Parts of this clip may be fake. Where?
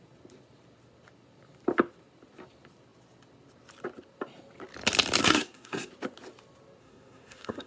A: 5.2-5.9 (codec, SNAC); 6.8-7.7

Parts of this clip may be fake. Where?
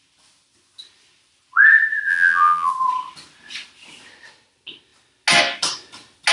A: 2.1-2.7 (vocoder, BigVGAN v2)